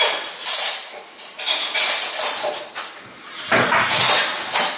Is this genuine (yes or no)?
yes